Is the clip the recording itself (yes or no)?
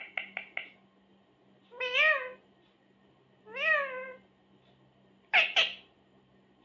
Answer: yes